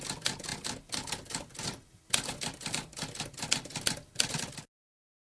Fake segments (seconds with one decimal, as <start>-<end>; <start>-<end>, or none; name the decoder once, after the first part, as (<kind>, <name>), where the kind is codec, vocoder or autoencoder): none